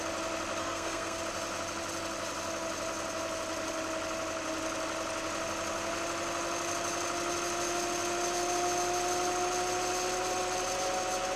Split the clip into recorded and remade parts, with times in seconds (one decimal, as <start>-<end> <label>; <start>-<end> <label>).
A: 0.0-0.6 recorded; 0.6-1.2 remade; 1.2-11.4 recorded

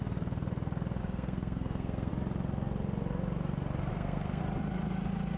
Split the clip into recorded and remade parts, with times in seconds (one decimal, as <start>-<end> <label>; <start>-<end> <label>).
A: 0.0-1.0 recorded; 1.0-2.1 remade; 2.1-3.9 recorded; 3.9-4.4 remade; 4.4-5.4 recorded

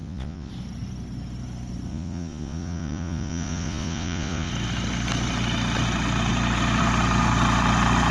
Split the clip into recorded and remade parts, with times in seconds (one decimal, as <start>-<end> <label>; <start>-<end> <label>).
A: 0.0-0.5 remade; 0.5-1.9 recorded; 1.9-4.5 remade; 4.5-8.1 recorded

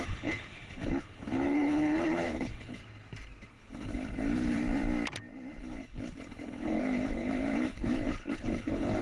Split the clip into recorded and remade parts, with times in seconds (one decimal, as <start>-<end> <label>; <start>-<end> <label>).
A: 0.0-2.8 remade; 2.8-3.5 recorded; 3.5-4.6 remade; 4.6-5.6 recorded; 5.6-9.0 remade

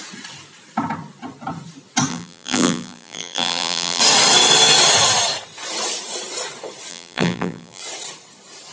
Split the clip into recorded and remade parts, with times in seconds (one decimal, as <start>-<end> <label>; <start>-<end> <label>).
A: 0.0-2.1 recorded; 2.1-4.0 remade; 4.0-6.9 recorded; 6.9-7.8 remade; 7.8-8.7 recorded

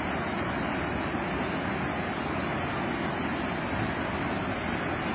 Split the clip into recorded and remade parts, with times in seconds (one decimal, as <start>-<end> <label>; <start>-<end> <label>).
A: 0.0-5.1 recorded